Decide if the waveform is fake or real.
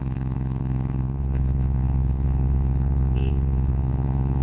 fake